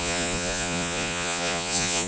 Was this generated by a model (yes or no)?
yes